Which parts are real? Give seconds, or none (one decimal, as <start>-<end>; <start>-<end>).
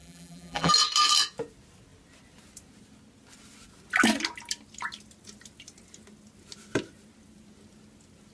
0.7-8.3